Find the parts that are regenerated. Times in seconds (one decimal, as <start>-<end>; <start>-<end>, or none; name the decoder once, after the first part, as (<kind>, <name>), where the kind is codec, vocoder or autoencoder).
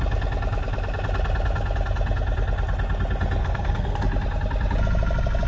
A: 3.4-4.0 (codec, SNAC)